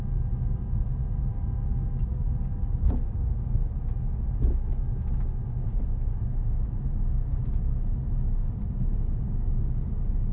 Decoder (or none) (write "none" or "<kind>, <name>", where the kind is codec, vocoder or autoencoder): none